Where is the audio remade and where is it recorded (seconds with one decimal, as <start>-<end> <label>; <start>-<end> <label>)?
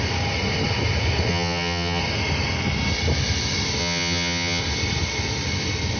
0.0-1.3 recorded; 1.3-2.0 remade; 2.0-3.8 recorded; 3.8-4.6 remade; 4.6-6.0 recorded